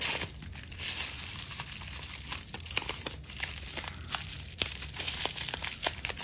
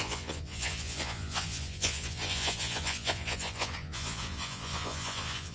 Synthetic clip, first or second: second